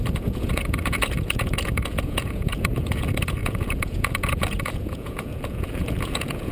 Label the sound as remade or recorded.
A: remade